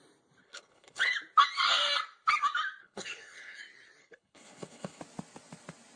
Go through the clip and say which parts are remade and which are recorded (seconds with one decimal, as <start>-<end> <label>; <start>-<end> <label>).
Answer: 0.0-0.4 recorded; 0.4-1.1 remade; 1.1-2.8 recorded; 2.8-3.6 remade; 3.6-4.0 recorded; 4.0-5.0 remade; 5.0-6.0 recorded